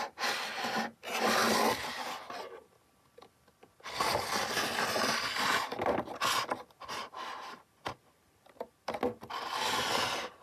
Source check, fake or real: real